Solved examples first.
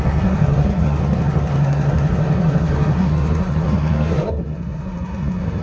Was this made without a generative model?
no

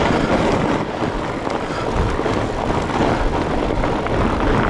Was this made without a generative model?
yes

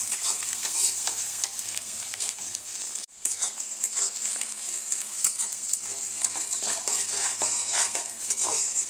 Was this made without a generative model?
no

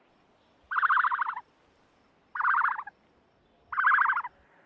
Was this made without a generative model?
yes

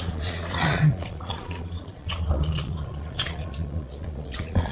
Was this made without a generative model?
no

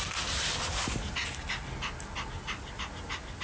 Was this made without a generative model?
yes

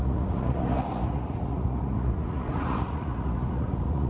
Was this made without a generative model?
no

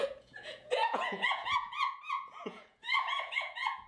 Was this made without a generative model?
no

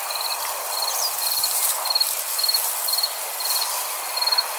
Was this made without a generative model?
yes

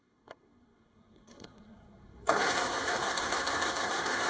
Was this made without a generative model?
no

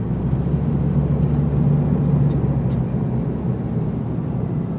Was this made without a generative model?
yes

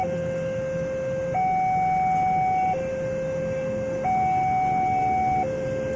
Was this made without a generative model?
yes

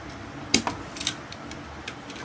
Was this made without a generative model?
yes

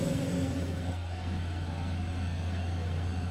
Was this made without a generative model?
no